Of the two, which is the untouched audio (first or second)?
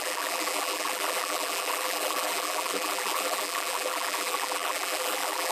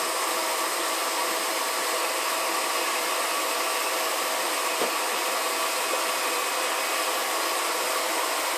second